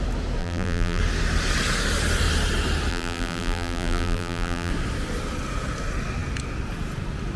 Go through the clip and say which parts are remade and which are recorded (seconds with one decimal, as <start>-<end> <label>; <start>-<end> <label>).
0.0-0.4 recorded; 0.4-1.0 remade; 1.0-2.9 recorded; 2.9-4.7 remade; 4.7-7.4 recorded

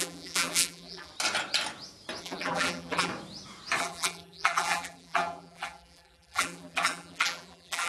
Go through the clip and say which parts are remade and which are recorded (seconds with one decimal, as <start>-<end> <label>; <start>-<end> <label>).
0.0-1.1 remade; 1.1-2.2 recorded; 2.2-3.1 remade; 3.1-3.8 recorded; 3.8-7.9 remade

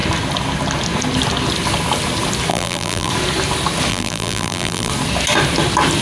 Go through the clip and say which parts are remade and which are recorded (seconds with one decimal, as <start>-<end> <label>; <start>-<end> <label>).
0.0-2.5 recorded; 2.5-3.1 remade; 3.1-3.9 recorded; 3.9-4.9 remade; 4.9-6.0 recorded

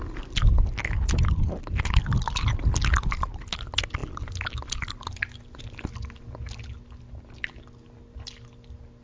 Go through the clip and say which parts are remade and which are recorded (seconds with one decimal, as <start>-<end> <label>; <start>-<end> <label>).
0.0-9.0 recorded

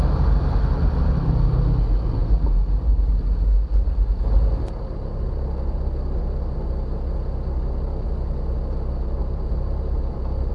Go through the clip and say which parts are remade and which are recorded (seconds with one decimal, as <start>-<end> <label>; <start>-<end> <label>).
0.0-2.2 recorded; 2.2-3.0 remade; 3.0-9.2 recorded; 9.2-10.5 remade

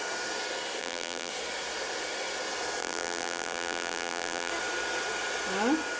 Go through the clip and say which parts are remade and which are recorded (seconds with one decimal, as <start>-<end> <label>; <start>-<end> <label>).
0.0-0.8 recorded; 0.8-1.3 remade; 1.3-2.8 recorded; 2.8-4.5 remade; 4.5-6.0 recorded

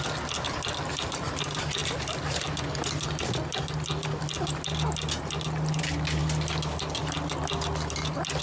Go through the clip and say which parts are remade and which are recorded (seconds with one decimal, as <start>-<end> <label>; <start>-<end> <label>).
0.0-8.4 recorded